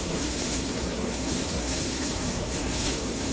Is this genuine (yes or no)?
no